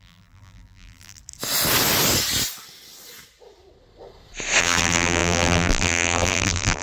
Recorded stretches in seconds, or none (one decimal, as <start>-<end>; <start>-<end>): 1.2-4.6